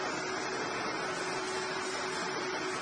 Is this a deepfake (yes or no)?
no